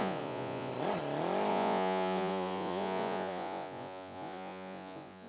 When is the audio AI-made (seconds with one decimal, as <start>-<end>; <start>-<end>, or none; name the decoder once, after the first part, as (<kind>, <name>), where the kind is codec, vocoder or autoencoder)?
0.0-0.7 (vocoder, Vocos); 1.5-5.3